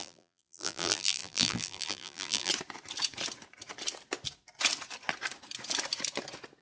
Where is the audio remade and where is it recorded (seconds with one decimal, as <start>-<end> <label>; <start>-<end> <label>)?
0.0-2.5 remade; 2.5-6.6 recorded